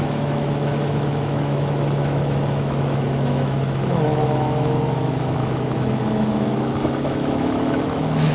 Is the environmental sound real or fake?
fake